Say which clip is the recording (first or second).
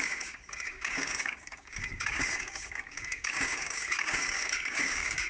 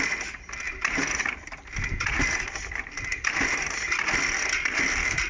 second